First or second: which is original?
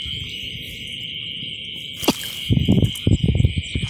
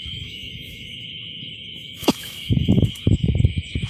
first